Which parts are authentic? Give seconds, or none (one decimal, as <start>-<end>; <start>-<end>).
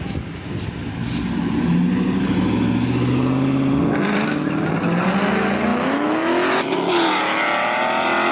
0.0-8.3